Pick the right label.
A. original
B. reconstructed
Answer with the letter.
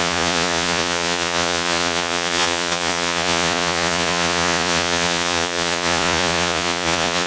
B